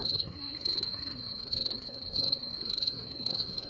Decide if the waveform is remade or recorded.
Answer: remade